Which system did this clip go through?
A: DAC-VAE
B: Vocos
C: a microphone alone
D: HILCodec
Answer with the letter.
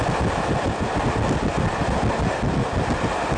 C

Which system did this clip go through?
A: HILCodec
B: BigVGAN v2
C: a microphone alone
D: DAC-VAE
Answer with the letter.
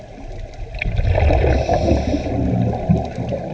C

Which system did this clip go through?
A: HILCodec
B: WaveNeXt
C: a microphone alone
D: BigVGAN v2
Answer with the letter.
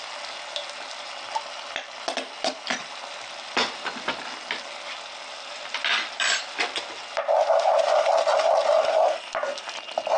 C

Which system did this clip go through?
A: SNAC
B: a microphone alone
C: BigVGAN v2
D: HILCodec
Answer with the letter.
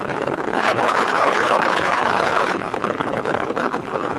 D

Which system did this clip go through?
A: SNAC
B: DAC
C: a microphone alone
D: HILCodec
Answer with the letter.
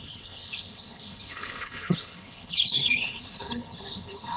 D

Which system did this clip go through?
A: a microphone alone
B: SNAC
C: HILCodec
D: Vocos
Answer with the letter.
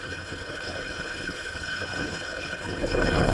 C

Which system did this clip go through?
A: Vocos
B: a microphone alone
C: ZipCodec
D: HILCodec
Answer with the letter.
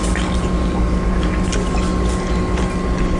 B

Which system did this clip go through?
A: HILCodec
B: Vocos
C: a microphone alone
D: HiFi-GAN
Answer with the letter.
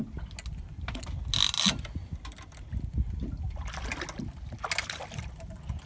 C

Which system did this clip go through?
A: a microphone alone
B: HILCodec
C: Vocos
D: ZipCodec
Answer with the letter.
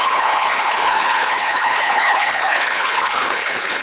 B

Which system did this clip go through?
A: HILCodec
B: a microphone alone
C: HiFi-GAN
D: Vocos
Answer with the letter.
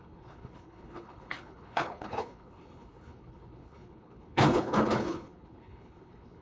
A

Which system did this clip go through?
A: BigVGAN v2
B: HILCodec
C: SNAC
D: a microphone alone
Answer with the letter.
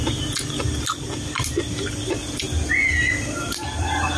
D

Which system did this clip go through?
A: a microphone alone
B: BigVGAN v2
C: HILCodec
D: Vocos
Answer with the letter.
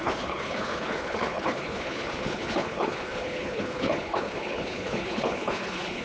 C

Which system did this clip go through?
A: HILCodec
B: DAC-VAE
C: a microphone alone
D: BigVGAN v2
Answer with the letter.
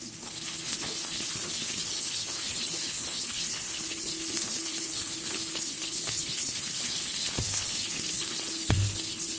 A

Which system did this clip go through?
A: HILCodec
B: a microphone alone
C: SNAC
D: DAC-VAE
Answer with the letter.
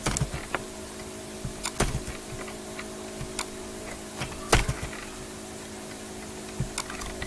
B